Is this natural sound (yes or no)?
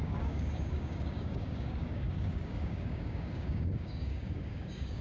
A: no